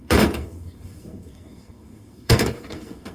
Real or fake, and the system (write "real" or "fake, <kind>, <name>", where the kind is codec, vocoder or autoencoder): fake, codec, SNAC